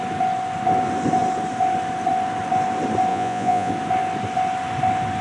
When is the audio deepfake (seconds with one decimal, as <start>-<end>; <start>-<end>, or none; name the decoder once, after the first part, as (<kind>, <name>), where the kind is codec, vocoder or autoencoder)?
3.1-3.7 (vocoder, Vocos)